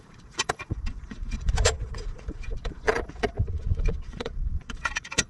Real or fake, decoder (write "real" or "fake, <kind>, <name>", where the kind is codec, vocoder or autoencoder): fake, vocoder, Vocos